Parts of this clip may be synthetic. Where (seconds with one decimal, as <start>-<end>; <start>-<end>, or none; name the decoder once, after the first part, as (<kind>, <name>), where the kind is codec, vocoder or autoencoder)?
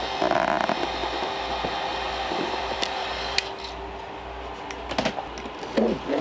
1.9-3.4 (vocoder, BigVGAN v2)